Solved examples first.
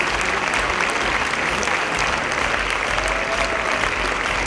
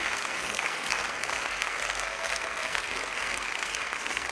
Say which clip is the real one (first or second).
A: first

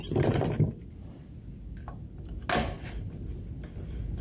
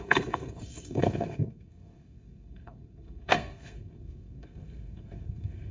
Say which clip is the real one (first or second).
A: first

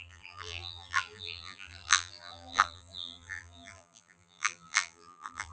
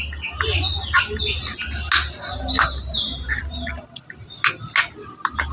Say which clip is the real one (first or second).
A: second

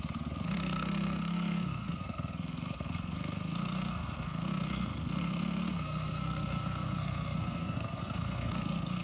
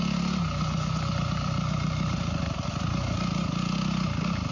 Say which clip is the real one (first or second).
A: second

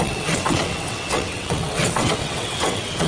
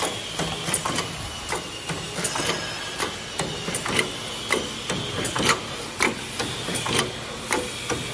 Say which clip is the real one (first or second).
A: second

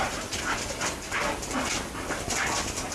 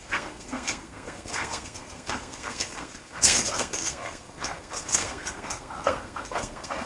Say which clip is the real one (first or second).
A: first